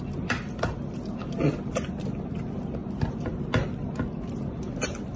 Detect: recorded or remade recorded